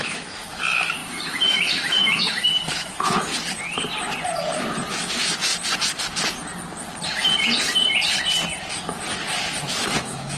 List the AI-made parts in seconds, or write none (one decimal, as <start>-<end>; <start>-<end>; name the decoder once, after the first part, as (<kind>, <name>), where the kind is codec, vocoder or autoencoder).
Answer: 0.0-3.3 (autoencoder, DAC-VAE); 4.9-5.5; 9.7-10.4